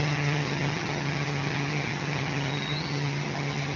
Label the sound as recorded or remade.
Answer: remade